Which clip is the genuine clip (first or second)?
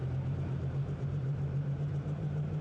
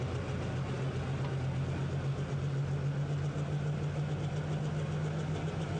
second